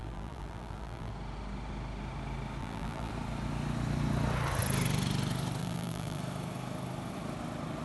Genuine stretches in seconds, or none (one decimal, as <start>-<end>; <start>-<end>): 1.1-2.6; 3.1-5.6; 6.2-7.8